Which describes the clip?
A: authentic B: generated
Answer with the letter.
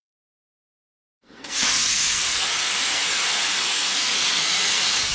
B